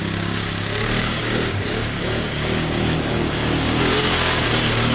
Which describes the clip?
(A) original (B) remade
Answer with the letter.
B